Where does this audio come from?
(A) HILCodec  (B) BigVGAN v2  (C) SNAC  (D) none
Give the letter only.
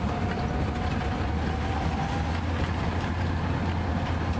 D